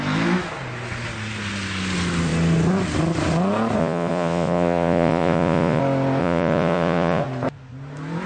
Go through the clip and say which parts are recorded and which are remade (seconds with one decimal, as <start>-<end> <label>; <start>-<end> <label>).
0.0-3.8 recorded; 3.8-5.8 remade; 5.8-6.2 recorded; 6.2-7.2 remade; 7.2-8.3 recorded